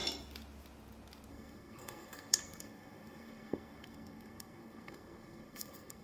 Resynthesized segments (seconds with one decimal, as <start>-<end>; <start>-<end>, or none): 1.3-6.0

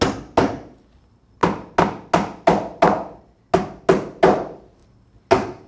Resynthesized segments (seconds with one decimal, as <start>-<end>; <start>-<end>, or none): none

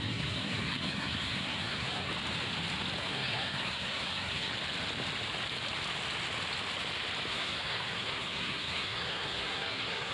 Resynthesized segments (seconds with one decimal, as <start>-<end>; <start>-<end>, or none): 0.0-2.1; 3.0-4.5; 7.3-10.1

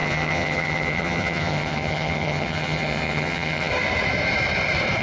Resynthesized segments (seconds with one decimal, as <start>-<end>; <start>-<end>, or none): 0.0-3.7

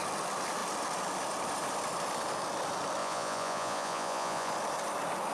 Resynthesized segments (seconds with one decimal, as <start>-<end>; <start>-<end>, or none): 3.0-4.5

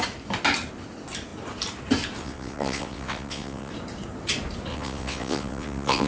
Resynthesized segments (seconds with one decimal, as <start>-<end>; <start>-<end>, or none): 2.2-3.7; 4.7-6.1

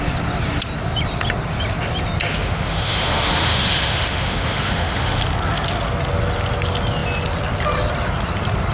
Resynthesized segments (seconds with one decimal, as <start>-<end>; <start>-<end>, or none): 2.3-5.2

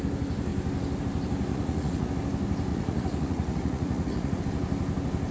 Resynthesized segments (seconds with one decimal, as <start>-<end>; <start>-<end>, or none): 1.5-2.1; 2.7-4.4